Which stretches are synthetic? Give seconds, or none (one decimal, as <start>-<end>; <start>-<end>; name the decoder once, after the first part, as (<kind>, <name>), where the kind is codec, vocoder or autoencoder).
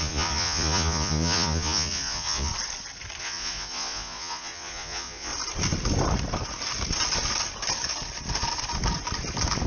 0.0-2.5 (vocoder, Vocos); 3.2-5.3